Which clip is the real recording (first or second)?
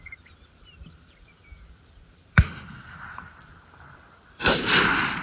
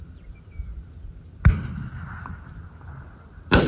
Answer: second